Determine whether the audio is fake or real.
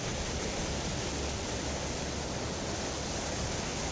real